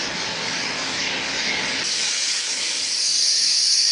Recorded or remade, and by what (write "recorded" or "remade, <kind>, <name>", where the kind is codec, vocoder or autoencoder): remade, codec, DAC